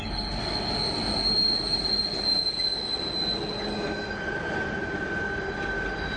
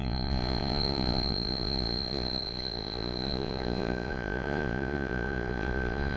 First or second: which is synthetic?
second